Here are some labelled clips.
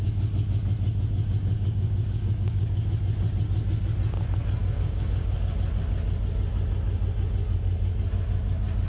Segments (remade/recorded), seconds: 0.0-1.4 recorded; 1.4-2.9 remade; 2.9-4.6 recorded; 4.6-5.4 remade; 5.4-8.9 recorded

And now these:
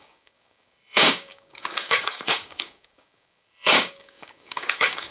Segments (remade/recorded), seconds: 0.0-5.1 remade

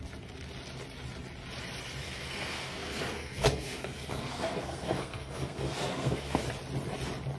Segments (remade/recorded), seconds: 0.0-2.0 recorded; 2.0-6.4 remade; 6.4-7.4 recorded

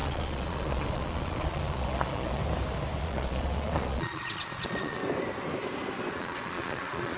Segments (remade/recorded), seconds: 0.0-2.4 remade; 2.4-3.0 recorded; 3.0-5.0 remade; 5.0-6.1 recorded; 6.1-7.2 remade

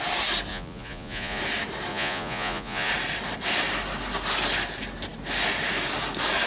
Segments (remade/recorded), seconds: 0.0-0.5 recorded; 0.5-1.4 remade; 1.4-1.9 recorded; 1.9-2.9 remade; 2.9-6.5 recorded